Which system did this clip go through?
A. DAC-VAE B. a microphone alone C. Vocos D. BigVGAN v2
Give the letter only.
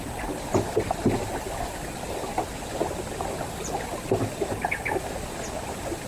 B